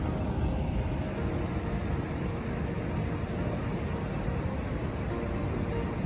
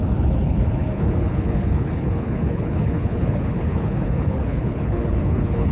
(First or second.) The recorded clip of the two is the first